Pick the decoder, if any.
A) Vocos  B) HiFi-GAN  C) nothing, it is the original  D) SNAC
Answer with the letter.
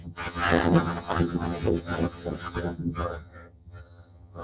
B